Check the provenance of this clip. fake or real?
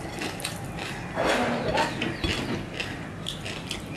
real